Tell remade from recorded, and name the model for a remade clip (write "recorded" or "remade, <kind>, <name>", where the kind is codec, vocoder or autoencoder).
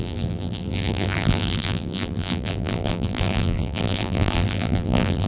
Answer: remade, vocoder, BigVGAN v2